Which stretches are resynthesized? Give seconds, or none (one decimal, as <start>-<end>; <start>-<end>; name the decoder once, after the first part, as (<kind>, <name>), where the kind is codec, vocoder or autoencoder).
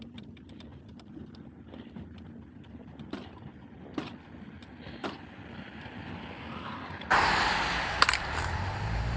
0.0-0.7 (vocoder, BigVGAN v2); 5.5-9.2